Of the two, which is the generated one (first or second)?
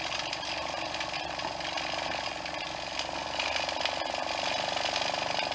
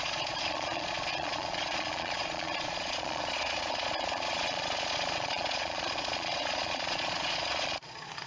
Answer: second